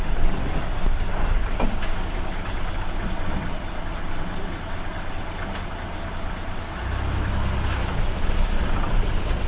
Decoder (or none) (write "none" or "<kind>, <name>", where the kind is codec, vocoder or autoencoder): none